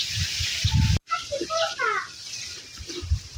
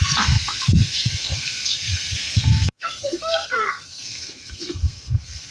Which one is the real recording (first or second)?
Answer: first